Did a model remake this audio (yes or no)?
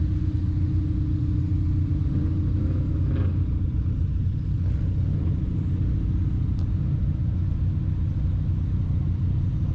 no